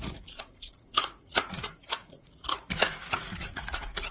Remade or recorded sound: remade